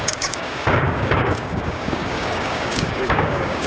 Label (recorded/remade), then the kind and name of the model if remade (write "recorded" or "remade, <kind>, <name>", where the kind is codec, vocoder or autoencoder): remade, codec, DAC